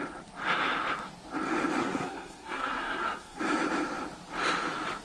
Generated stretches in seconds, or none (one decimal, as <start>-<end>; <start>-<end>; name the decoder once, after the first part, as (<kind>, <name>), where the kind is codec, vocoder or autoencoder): 1.8-3.4 (codec, SNAC)